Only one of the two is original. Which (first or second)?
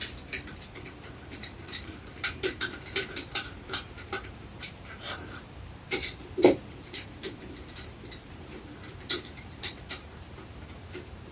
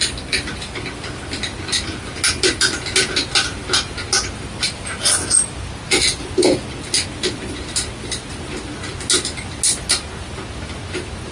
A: second